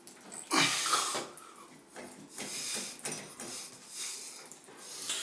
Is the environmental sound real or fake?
real